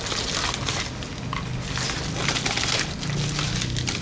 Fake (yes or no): no